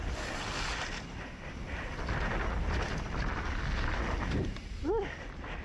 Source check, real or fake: real